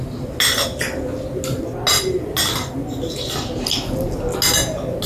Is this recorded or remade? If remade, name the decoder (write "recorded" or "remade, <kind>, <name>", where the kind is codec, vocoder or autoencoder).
recorded